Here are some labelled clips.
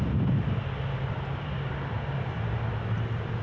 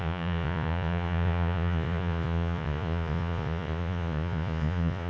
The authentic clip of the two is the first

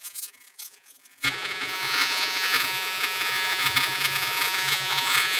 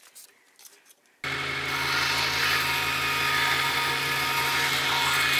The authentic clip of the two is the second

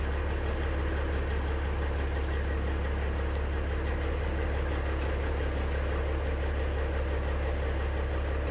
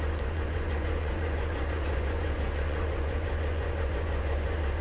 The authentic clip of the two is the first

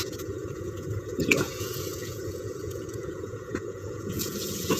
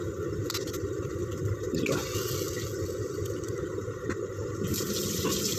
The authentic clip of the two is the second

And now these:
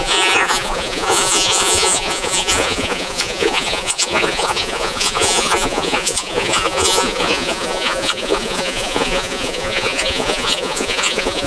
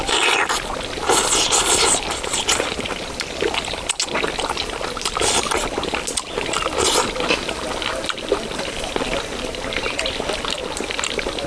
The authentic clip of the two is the second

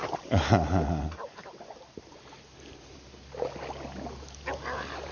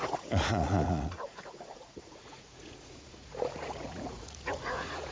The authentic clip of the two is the first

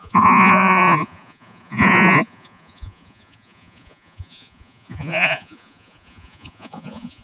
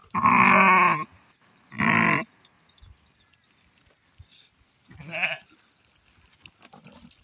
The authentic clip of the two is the second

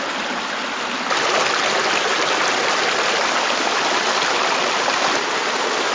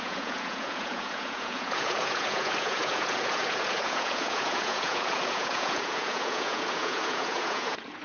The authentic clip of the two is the first